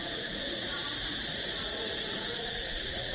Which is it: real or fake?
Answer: fake